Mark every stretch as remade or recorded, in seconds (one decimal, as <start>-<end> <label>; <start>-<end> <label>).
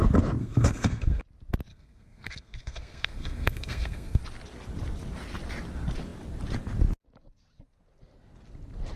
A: 0.0-0.4 recorded; 0.4-1.2 remade; 1.2-1.7 recorded; 1.7-4.2 remade; 4.2-9.0 recorded